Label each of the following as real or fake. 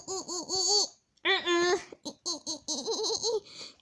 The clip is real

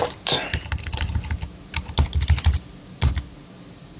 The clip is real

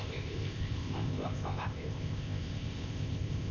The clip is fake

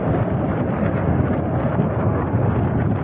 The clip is real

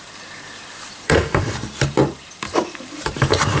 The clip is fake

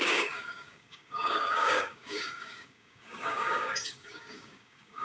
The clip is fake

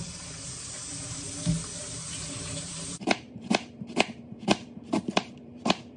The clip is fake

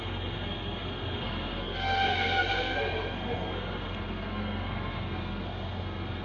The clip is fake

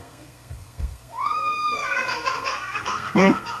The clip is fake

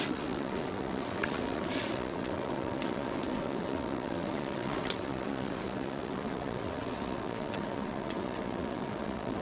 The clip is fake